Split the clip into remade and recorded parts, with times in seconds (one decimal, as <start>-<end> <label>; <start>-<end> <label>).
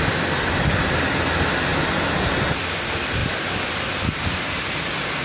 0.0-1.7 recorded; 1.7-2.8 remade; 2.8-3.2 recorded; 3.2-4.3 remade; 4.3-5.2 recorded